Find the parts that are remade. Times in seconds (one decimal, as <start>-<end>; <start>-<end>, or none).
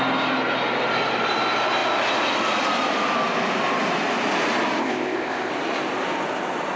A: 4.8-5.5